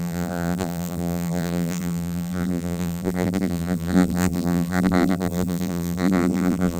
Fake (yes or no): yes